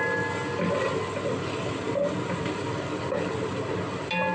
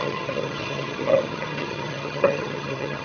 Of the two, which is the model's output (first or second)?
second